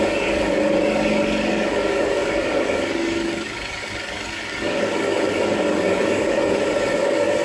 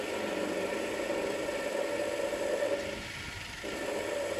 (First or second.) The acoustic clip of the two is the second